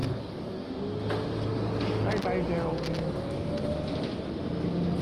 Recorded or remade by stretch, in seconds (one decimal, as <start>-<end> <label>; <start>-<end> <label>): 0.0-0.7 remade; 0.7-1.5 recorded; 1.5-2.1 remade; 2.1-5.0 recorded